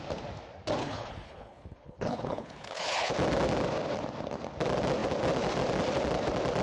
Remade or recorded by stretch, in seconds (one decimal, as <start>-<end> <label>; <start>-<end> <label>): 0.0-0.8 recorded; 0.8-3.1 remade; 3.1-6.6 recorded